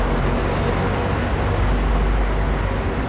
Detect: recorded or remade recorded